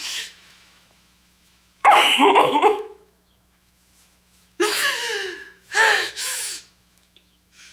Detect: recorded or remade remade